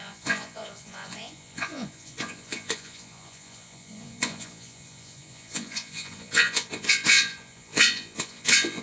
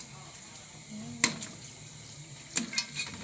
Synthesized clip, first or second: first